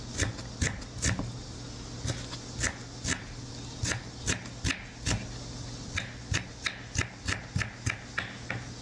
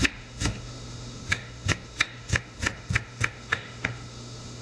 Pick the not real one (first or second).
second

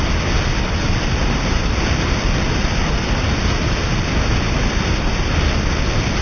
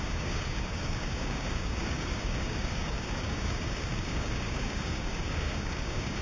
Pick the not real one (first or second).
second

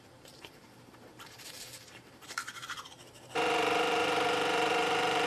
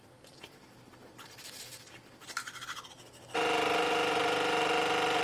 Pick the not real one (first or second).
first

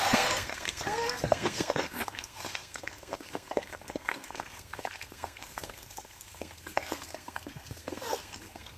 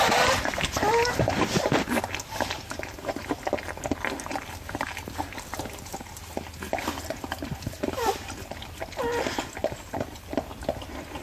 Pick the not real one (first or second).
first